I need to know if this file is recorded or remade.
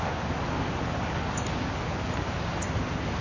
recorded